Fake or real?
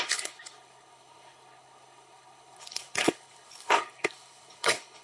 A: fake